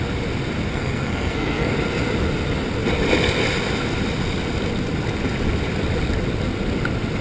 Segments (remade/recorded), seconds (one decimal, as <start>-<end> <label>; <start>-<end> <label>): 0.0-0.7 recorded; 0.7-1.7 remade; 1.7-7.2 recorded